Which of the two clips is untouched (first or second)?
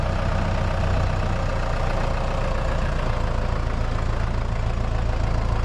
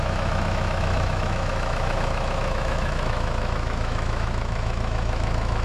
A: first